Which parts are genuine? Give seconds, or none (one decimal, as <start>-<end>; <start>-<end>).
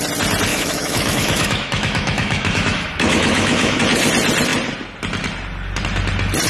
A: 0.0-0.5; 3.8-6.5